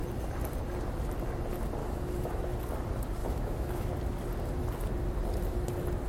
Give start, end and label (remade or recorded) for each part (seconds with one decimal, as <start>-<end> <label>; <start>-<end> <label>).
0.0-1.8 recorded; 1.8-2.4 remade; 2.4-3.2 recorded; 3.2-3.9 remade; 3.9-6.1 recorded